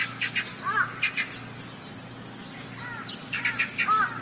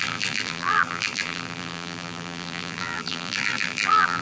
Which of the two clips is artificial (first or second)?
second